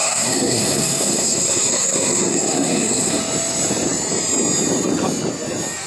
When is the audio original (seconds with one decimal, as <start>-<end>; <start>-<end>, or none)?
3.2-5.9